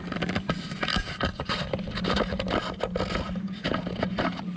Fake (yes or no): no